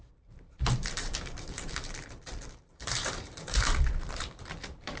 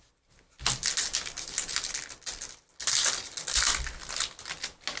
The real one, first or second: second